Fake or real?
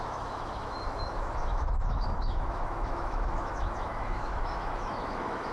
fake